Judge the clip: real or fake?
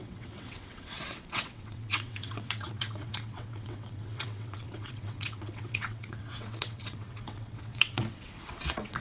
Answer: fake